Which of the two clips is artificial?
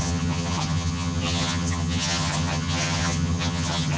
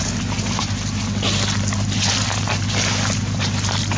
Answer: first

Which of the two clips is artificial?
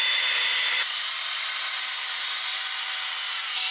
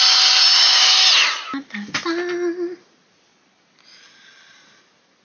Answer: first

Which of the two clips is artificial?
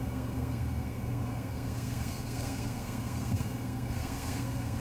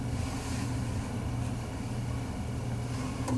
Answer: first